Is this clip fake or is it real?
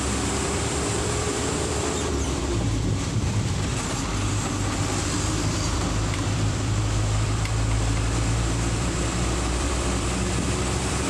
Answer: fake